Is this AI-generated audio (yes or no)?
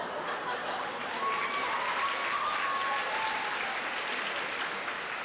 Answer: no